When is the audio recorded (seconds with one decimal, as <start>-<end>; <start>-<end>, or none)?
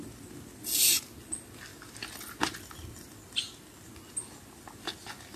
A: 0.0-5.4